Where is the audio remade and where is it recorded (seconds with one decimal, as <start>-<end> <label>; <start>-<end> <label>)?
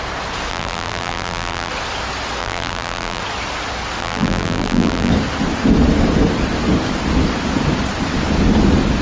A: 0.0-0.5 recorded; 0.5-1.7 remade; 1.7-2.4 recorded; 2.4-3.2 remade; 3.2-4.0 recorded; 4.0-5.1 remade; 5.1-9.0 recorded